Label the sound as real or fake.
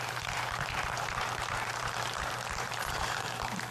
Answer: fake